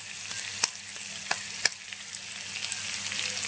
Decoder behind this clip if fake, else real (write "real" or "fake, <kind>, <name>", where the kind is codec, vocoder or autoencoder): real